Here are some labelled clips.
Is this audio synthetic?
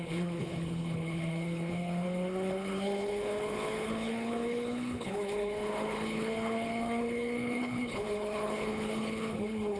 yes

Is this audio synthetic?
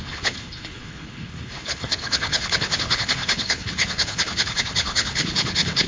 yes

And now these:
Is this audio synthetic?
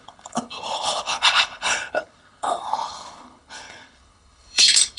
yes